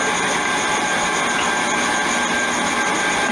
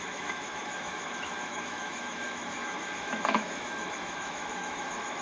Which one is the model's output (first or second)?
second